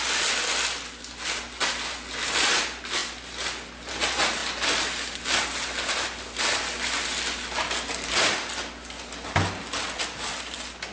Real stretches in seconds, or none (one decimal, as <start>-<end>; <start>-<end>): 0.0-10.9